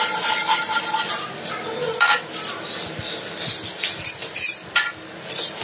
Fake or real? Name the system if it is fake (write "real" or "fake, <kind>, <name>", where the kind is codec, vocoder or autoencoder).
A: real